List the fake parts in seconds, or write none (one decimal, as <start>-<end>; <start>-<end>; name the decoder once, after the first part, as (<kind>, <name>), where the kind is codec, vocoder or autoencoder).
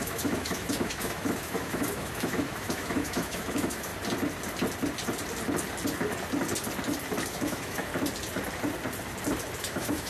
0.0-3.9 (autoencoder, DAC-VAE); 7.3-7.9; 9.6-10.1